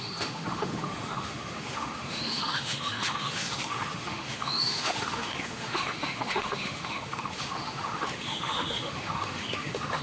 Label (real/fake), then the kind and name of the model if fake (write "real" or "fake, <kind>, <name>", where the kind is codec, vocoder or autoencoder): fake, autoencoder, DAC-VAE